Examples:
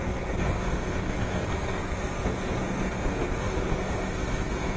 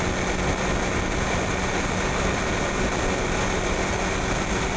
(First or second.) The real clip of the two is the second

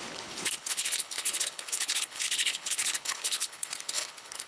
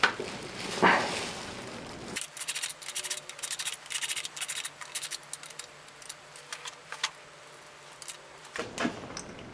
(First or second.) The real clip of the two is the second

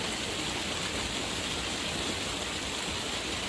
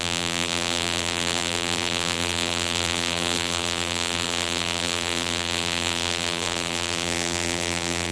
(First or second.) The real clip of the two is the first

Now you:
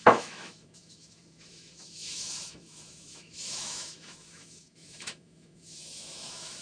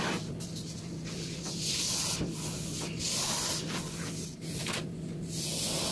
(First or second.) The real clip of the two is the second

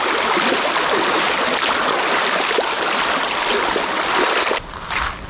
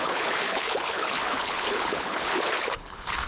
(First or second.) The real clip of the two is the first